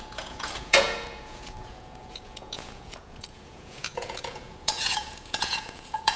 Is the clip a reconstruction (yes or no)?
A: yes